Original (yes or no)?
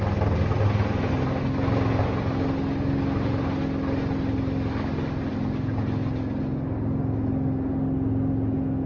yes